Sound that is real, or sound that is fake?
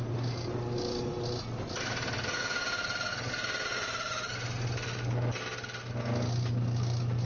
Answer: real